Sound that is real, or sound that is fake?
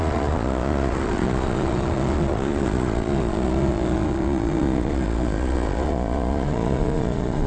fake